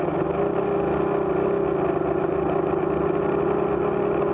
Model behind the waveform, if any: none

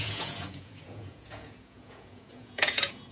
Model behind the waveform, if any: vocoder, Vocos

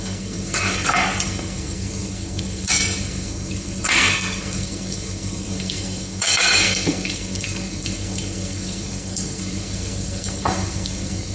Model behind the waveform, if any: codec, SNAC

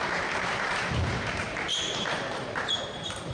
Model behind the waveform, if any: vocoder, BigVGAN v2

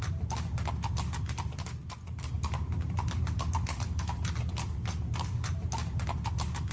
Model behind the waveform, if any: none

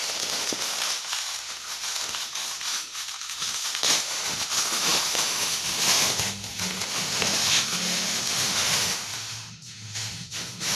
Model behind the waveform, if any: autoencoder, DAC-VAE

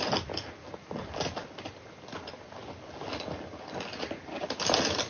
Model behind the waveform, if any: none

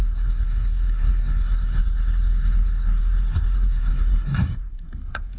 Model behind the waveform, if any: codec, SNAC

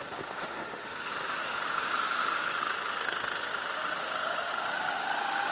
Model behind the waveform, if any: autoencoder, DAC-VAE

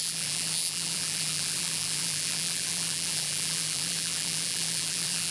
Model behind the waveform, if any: vocoder, BigVGAN v2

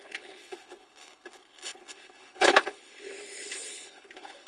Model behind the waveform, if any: codec, HILCodec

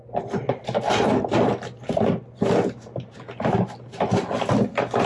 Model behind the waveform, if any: none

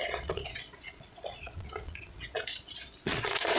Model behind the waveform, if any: vocoder, Vocos